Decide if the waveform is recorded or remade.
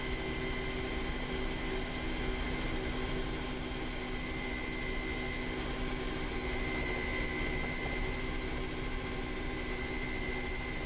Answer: recorded